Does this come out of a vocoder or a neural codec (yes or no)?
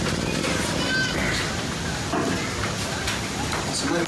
no